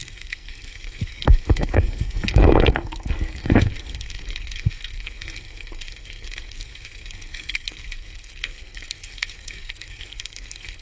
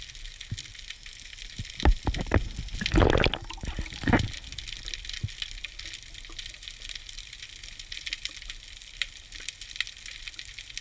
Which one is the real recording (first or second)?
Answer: second